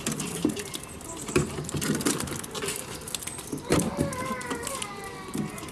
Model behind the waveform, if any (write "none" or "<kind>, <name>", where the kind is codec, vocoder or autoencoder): none